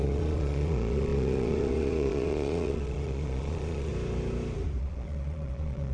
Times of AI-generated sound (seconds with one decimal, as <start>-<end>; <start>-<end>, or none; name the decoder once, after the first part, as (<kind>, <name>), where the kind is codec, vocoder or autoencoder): 0.0-3.9 (vocoder, Vocos); 4.8-5.9